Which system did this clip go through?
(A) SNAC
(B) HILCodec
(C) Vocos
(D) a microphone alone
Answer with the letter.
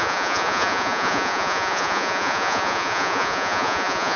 C